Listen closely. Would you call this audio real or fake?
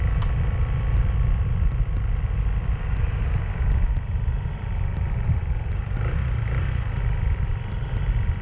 real